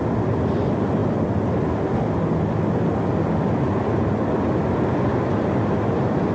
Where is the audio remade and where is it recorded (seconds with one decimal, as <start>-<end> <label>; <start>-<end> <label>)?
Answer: 0.0-6.3 recorded